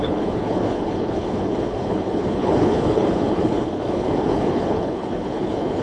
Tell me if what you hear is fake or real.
fake